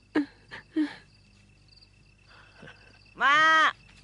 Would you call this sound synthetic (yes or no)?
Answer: no